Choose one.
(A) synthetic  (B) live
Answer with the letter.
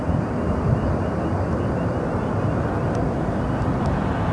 B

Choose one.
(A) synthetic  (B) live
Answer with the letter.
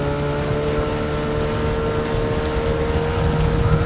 B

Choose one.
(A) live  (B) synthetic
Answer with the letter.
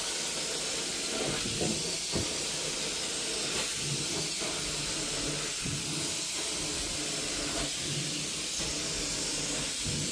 A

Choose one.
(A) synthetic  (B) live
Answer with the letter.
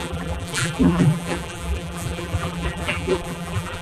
A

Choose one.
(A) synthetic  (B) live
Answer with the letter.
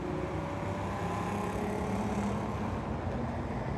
B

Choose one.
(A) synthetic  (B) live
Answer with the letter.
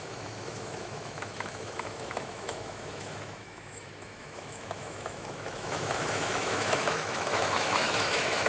A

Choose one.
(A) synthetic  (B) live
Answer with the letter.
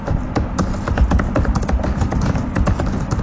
B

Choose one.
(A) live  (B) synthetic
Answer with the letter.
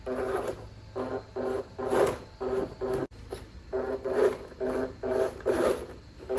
A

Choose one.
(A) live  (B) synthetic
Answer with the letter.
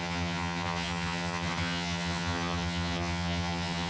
B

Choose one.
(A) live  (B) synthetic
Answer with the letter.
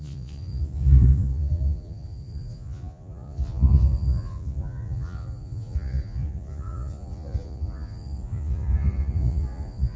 B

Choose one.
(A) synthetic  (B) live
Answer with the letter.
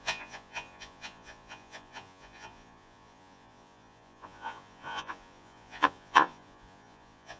A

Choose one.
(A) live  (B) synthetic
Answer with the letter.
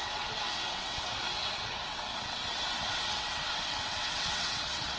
B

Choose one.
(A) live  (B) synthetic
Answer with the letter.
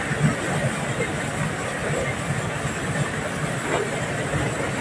A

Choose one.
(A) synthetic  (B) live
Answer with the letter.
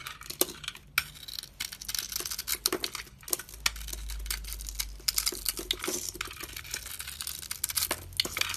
B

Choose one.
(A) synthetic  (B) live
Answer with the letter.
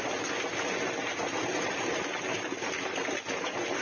B